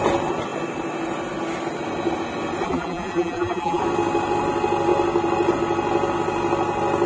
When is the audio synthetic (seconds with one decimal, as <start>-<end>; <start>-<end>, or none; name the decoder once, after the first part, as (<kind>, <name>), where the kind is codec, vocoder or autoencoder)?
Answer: 2.6-3.8 (vocoder, BigVGAN v2)